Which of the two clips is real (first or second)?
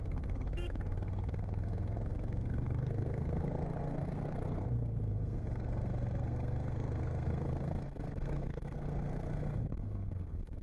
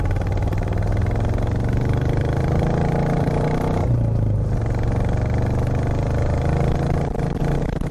second